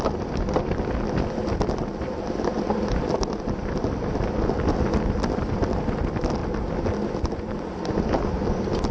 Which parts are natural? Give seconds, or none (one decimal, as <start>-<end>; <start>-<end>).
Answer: 0.0-8.9

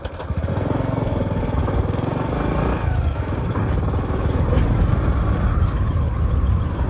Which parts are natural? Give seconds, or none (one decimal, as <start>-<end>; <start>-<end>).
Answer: 0.0-0.5; 1.4-6.9

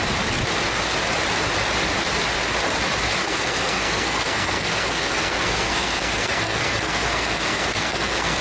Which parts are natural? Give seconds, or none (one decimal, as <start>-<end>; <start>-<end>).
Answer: 0.0-3.2

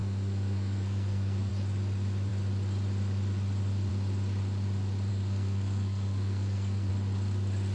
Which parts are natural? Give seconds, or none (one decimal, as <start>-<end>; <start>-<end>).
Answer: 1.5-5.1; 6.9-7.7

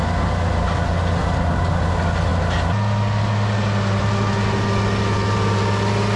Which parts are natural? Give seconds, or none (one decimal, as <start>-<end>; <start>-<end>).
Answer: 0.0-6.2